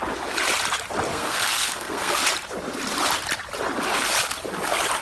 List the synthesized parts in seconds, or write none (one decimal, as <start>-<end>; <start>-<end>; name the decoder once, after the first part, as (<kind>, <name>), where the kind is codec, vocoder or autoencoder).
1.1-2.2 (codec, SNAC)